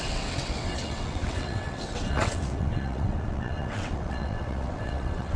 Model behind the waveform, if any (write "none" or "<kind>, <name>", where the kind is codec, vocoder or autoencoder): vocoder, WaveNeXt